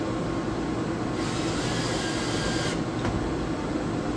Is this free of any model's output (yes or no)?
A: yes